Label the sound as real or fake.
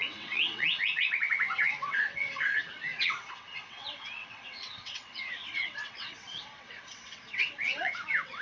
fake